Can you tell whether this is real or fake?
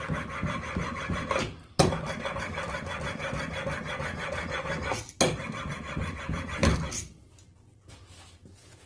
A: real